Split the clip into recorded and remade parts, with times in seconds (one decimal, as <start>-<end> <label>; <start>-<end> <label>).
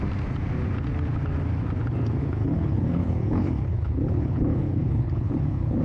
0.0-2.2 recorded; 2.2-5.8 remade